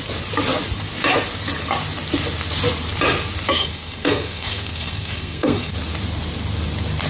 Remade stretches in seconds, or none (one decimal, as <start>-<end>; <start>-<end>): 3.5-5.7